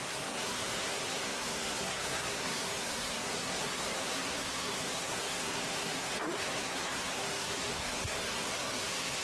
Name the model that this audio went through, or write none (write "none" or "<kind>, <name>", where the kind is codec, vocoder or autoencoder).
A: codec, SNAC